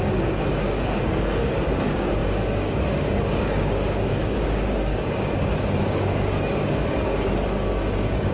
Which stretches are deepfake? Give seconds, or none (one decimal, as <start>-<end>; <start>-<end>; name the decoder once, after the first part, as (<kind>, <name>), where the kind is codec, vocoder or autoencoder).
0.0-8.3 (codec, DAC)